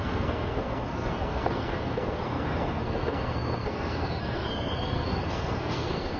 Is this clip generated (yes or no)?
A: yes